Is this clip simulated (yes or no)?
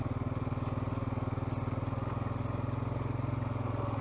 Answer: no